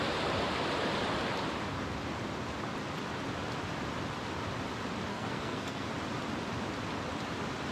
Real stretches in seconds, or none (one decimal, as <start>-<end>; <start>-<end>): 0.0-5.1; 5.9-7.7